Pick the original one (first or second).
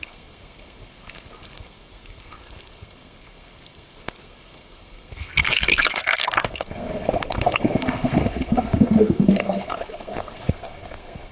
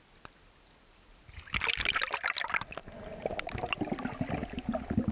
second